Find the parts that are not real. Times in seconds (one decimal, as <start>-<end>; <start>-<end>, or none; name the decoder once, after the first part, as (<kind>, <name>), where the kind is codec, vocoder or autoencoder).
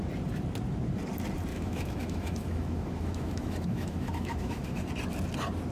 1.5-4.9 (autoencoder, DAC-VAE)